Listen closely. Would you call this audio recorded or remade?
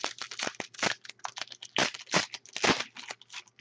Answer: recorded